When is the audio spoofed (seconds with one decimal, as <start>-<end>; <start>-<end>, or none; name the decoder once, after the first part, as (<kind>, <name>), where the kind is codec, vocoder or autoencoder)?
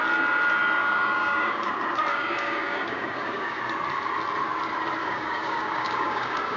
0.8-1.7 (codec, DAC); 2.1-3.6; 5.0-6.6